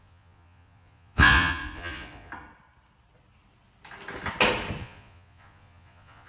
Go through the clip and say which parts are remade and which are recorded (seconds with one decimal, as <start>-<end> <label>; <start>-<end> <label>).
0.0-2.3 remade; 2.3-4.8 recorded; 4.8-6.3 remade